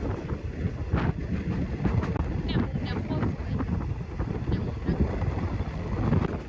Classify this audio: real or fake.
real